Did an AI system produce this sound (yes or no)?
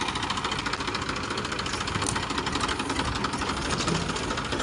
no